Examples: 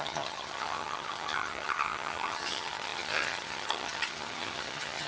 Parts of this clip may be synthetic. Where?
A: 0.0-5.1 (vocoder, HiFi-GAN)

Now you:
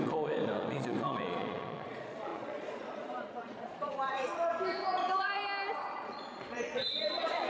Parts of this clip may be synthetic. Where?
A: 0.0-4.5 (vocoder, Vocos); 5.0-5.4; 5.9-7.5

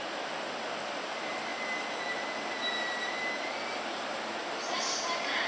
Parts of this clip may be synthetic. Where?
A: none

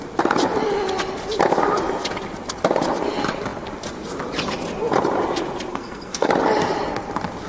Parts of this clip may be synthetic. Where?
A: 5.7-6.3 (codec, SNAC)

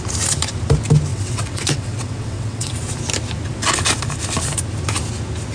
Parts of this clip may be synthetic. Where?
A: 1.1-2.7 (vocoder, WaveNeXt)